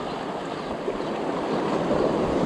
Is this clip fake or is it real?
real